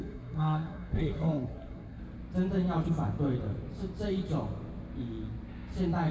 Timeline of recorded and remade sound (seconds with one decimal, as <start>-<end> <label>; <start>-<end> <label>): 0.0-2.0 remade; 2.0-6.1 recorded

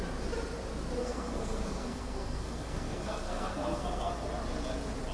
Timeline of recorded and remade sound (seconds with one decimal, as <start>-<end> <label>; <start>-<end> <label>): 0.0-1.0 recorded; 1.0-4.1 remade; 4.1-5.1 recorded

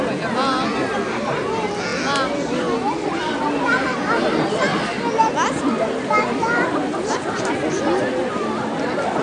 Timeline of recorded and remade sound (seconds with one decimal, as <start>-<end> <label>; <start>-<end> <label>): 0.0-9.2 recorded

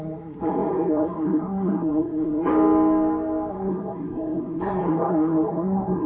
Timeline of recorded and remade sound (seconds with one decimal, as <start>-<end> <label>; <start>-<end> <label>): 0.0-2.5 remade; 2.5-3.5 recorded; 3.5-6.1 remade

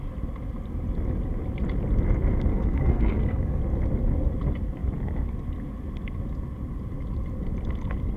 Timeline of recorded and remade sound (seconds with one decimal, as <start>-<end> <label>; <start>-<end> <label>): 0.0-2.5 recorded; 2.5-3.6 remade; 3.6-8.2 recorded